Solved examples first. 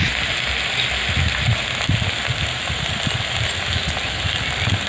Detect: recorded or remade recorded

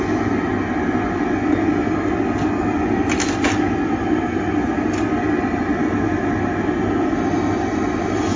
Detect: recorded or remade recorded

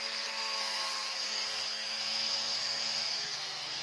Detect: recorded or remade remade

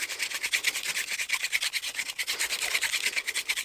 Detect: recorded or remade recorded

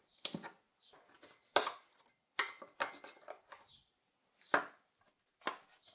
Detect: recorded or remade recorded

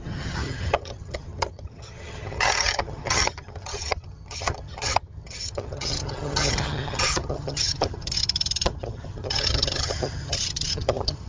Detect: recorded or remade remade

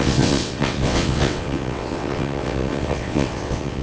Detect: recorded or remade remade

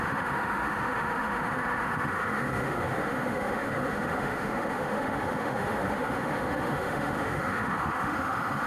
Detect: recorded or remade remade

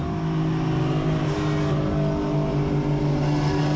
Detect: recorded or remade recorded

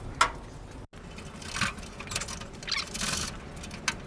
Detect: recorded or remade recorded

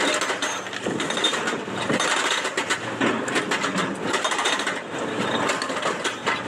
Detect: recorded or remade recorded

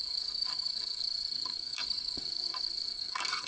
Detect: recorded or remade remade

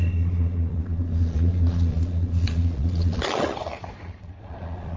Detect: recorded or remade remade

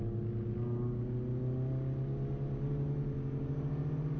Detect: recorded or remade recorded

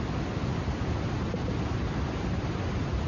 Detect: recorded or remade recorded